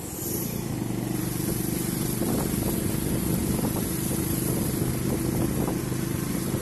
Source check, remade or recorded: recorded